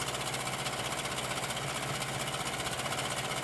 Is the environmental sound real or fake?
real